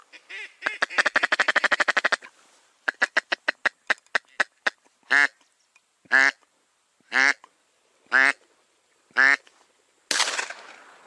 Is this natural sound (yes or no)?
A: yes